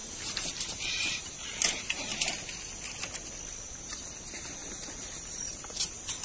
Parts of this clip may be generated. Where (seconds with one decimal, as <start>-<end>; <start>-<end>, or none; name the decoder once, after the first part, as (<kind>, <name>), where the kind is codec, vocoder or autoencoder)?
0.7-2.1 (vocoder, BigVGAN v2); 3.6-6.2